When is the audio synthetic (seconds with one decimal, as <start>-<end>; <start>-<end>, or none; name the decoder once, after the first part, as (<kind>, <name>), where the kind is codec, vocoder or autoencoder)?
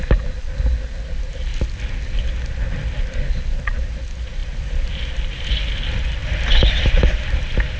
4.4-5.7 (vocoder, BigVGAN v2); 6.2-7.8